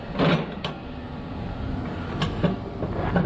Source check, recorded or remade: recorded